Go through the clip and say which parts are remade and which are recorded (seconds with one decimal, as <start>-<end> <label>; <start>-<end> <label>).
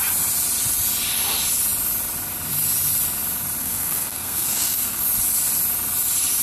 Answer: 0.0-3.6 recorded; 3.6-5.0 remade; 5.0-6.4 recorded